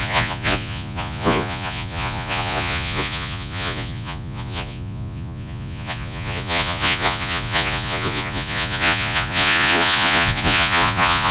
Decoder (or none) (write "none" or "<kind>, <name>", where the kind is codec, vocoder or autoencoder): vocoder, Vocos